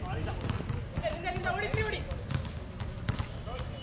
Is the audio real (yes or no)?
yes